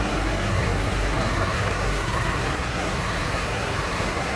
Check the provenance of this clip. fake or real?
fake